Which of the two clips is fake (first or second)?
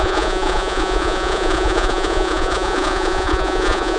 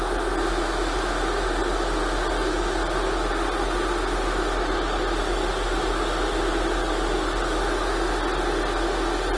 first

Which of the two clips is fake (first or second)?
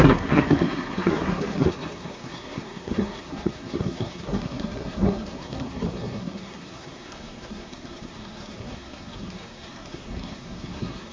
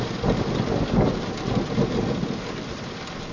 first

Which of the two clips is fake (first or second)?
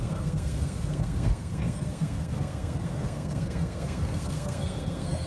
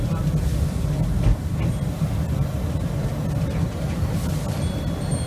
first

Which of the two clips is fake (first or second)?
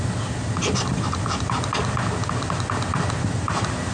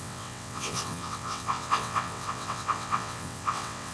second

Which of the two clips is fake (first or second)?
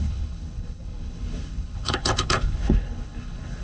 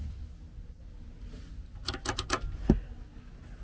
first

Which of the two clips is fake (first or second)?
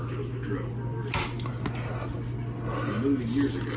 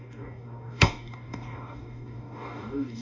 second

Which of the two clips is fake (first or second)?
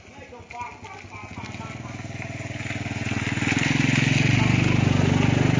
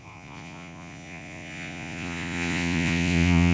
second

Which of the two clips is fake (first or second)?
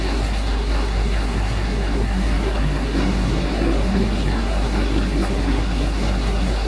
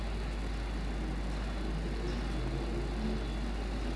first